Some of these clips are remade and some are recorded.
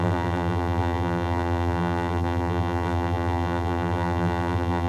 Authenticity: remade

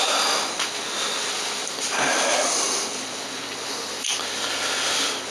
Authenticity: recorded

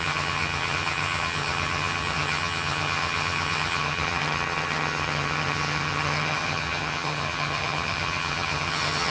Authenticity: remade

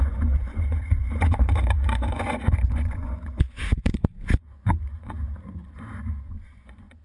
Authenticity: remade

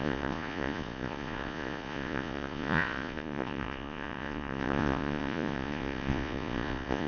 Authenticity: remade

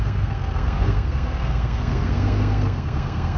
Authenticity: remade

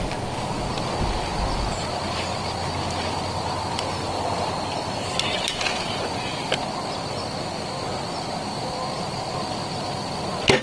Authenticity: recorded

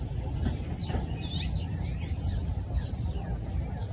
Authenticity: recorded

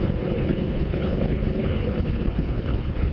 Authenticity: remade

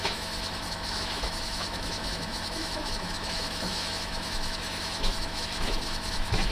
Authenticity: remade